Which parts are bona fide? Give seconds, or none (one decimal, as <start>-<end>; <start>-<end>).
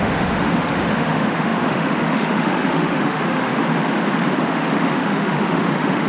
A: 3.6-4.4